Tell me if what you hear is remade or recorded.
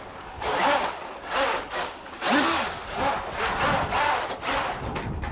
recorded